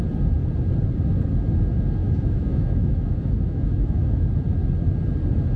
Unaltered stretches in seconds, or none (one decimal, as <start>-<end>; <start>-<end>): 0.0-2.0; 4.3-5.6